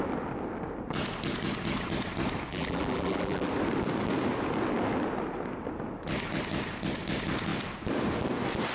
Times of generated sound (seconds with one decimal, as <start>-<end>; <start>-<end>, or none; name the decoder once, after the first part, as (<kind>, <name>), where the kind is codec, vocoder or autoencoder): 2.5-3.5 (vocoder, BigVGAN v2)